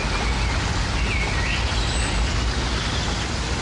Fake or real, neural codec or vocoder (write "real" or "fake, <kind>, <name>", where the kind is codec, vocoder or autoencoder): real